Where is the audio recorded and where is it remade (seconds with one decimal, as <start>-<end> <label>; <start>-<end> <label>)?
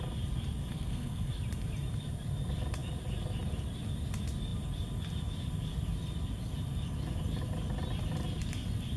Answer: 0.0-0.6 recorded; 0.6-1.3 remade; 1.3-9.0 recorded